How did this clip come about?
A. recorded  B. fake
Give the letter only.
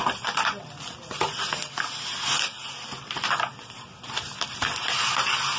A